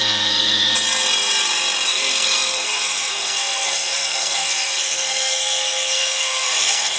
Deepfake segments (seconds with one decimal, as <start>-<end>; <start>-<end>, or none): 0.0-0.7; 1.9-7.0